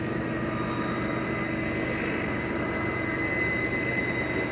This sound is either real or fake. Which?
real